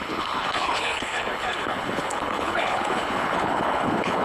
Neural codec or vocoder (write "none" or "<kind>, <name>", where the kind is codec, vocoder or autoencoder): codec, HILCodec